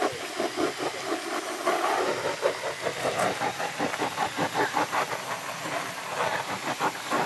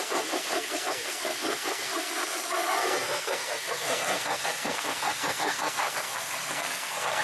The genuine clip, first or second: first